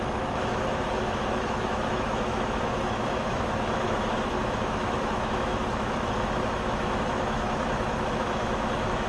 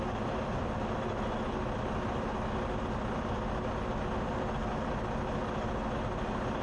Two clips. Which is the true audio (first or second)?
second